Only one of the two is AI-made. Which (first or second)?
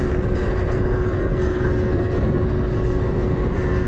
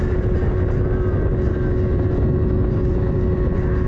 first